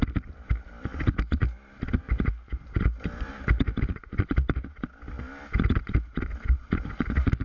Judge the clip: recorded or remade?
recorded